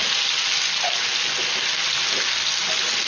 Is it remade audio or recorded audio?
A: recorded